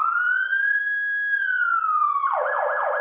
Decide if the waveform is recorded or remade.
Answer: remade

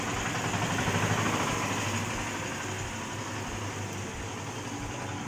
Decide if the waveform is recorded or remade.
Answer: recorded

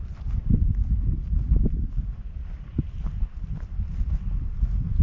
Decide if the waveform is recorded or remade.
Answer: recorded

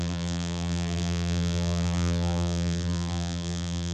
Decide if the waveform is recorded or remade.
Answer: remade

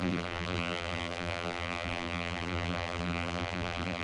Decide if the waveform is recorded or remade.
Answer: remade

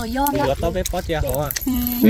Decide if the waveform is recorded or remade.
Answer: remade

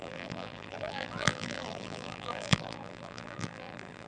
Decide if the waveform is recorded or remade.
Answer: remade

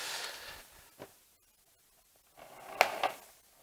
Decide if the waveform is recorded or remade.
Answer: recorded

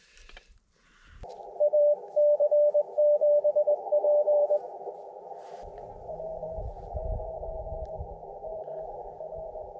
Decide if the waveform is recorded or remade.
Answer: remade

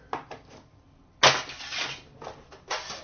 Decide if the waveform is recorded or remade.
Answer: recorded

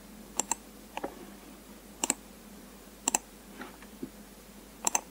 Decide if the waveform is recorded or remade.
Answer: remade